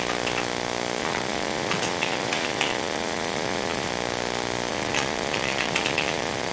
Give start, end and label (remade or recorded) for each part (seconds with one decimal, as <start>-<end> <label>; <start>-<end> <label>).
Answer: 0.0-1.0 recorded; 1.0-3.9 remade; 3.9-4.7 recorded; 4.7-6.5 remade